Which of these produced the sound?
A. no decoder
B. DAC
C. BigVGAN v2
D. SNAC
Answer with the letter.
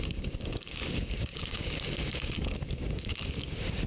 B